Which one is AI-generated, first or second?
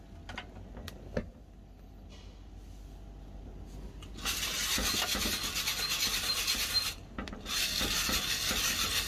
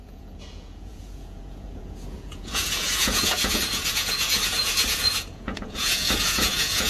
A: second